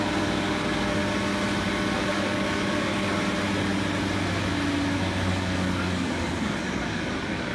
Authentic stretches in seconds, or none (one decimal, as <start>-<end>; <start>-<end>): 1.0-2.1; 3.1-5.3